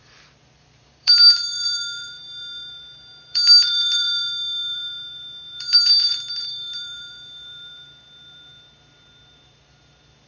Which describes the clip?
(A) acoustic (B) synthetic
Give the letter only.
B